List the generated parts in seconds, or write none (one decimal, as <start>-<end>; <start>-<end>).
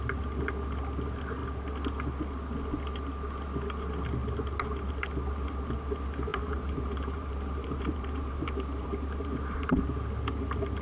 6.3-9.7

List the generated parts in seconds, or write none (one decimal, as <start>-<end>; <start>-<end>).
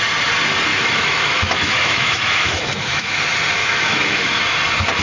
0.7-3.2; 3.6-4.4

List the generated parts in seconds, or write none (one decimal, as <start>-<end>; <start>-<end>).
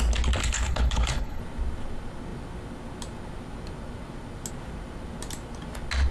0.4-1.4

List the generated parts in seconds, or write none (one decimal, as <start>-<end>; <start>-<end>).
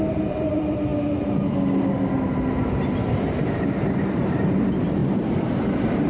0.0-0.9; 3.7-6.1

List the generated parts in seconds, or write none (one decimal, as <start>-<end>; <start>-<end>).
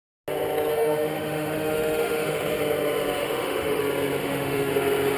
0.7-2.6; 3.2-3.8; 4.2-4.7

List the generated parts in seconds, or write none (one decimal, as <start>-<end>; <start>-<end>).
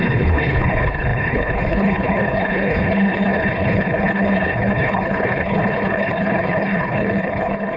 0.0-7.8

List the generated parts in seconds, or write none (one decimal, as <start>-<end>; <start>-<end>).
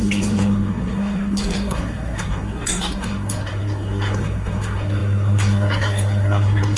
0.0-6.8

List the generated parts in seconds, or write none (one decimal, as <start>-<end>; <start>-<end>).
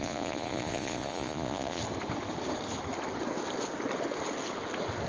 0.0-1.8